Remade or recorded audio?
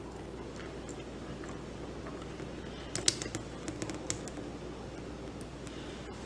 recorded